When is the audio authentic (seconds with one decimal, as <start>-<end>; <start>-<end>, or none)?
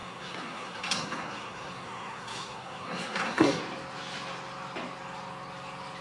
3.6-6.0